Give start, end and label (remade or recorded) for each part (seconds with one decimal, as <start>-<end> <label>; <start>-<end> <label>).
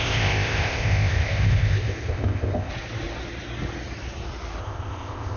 0.0-2.7 remade; 2.7-4.6 recorded; 4.6-5.4 remade